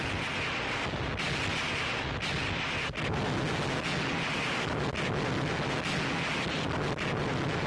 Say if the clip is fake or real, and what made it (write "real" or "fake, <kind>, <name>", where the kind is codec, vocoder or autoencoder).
real